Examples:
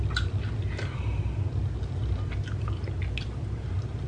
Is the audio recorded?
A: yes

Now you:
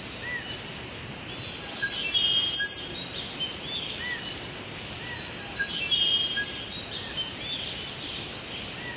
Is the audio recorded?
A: yes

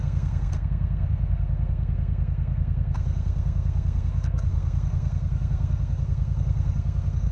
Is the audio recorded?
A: no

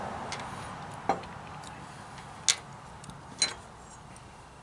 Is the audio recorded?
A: yes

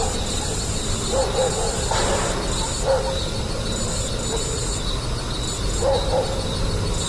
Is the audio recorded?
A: yes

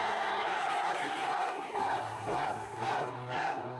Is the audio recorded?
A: no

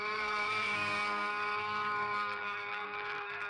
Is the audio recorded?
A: no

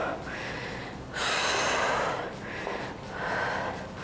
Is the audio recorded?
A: yes